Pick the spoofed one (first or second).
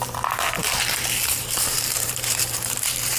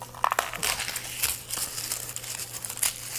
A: first